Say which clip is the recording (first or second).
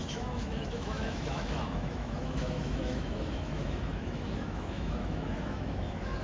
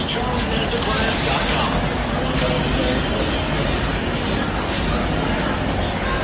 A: second